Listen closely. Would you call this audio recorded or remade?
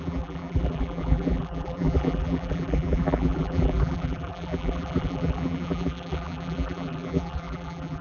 remade